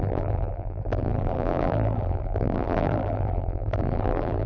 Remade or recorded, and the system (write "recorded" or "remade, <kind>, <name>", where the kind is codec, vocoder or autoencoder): remade, vocoder, BigVGAN v2